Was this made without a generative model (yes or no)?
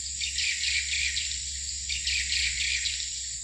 yes